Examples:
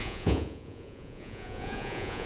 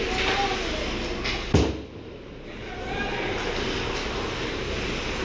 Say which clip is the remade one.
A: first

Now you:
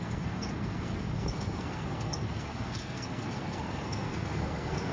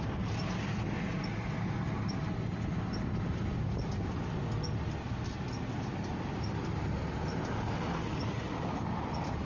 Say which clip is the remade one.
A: first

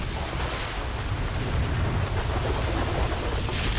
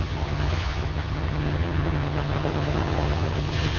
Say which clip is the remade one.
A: second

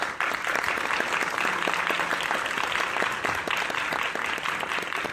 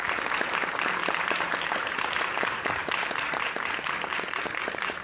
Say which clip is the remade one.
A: second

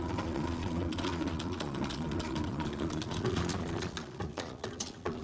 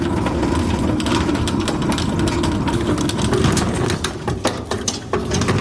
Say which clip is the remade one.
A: first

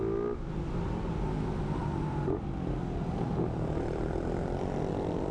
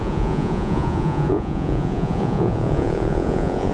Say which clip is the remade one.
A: second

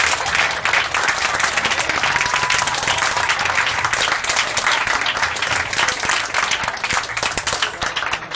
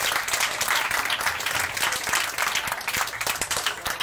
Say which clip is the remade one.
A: second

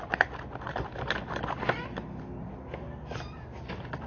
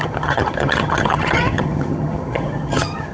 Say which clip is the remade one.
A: second